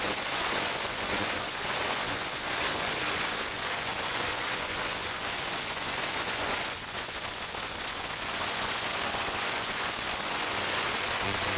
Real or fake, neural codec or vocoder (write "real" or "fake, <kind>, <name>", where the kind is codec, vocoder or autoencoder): fake, vocoder, Vocos